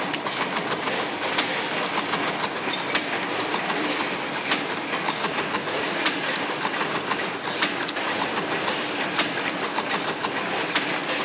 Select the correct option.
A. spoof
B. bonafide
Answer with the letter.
B